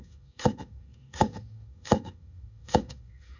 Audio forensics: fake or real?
fake